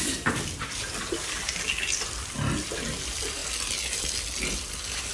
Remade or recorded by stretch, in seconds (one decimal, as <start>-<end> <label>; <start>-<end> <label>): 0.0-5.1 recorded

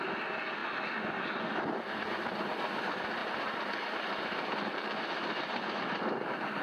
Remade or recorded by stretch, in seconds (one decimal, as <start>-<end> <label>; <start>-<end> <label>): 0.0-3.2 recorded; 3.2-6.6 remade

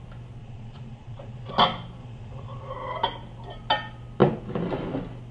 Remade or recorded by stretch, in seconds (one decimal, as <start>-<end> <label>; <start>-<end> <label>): 0.0-0.4 recorded; 0.4-1.5 remade; 1.5-2.0 recorded; 2.0-2.7 remade; 2.7-5.3 recorded